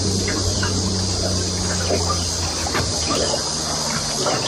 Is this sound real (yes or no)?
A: yes